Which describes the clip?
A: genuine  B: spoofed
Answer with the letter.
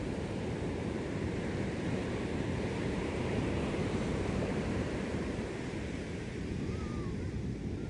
B